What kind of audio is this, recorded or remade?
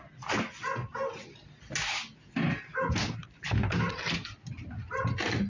recorded